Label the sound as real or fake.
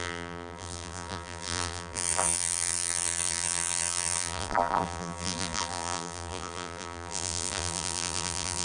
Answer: fake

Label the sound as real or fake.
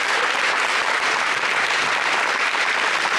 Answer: fake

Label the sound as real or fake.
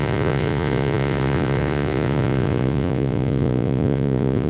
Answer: fake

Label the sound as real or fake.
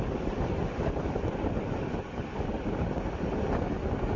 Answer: real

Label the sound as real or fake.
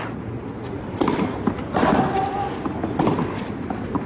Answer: real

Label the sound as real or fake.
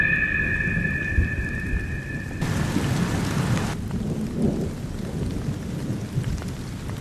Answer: real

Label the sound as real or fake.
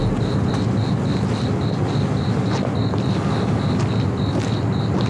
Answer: real